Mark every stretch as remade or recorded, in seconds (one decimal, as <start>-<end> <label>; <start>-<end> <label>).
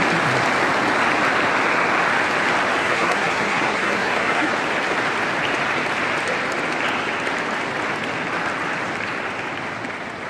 0.0-2.8 recorded; 2.8-4.5 remade; 4.5-10.3 recorded